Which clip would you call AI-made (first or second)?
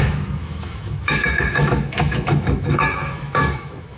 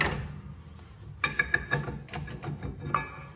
first